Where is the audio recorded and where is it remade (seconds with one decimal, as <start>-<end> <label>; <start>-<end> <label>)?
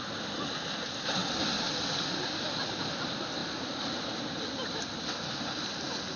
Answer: 0.0-3.4 recorded; 3.4-4.8 remade; 4.8-6.2 recorded